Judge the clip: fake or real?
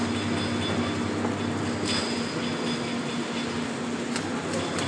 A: real